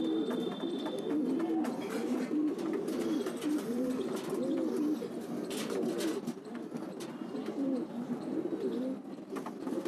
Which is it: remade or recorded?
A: recorded